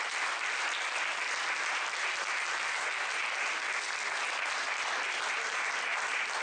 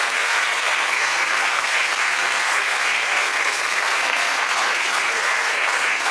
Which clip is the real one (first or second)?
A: first